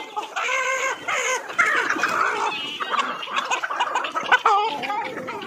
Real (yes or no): yes